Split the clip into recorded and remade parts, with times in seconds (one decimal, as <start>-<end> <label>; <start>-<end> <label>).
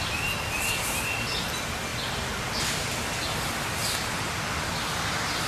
0.0-3.8 recorded; 3.8-4.7 remade; 4.7-5.5 recorded